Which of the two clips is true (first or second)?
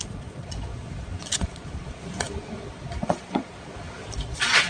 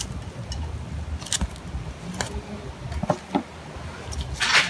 second